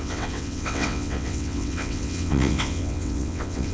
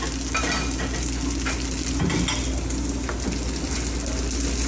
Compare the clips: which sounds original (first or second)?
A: second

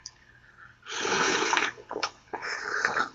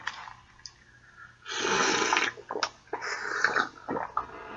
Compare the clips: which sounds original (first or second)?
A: second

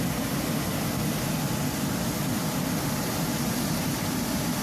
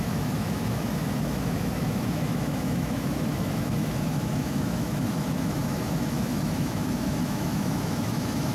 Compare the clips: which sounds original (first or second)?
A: first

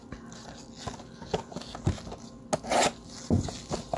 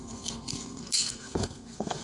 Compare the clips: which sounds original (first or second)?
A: first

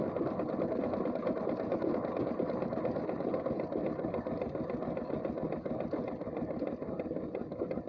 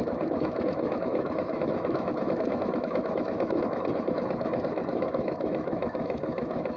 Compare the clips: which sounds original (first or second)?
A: first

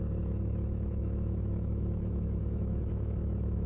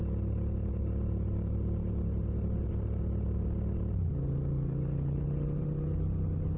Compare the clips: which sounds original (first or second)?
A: second